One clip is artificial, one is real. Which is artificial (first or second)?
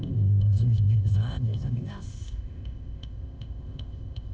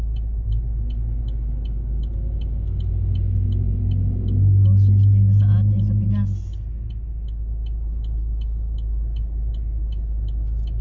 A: first